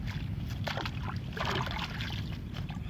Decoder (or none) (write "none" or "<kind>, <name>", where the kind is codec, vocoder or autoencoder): none